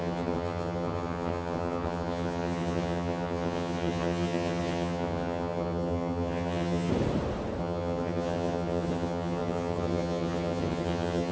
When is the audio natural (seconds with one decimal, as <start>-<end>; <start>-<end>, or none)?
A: 6.9-7.6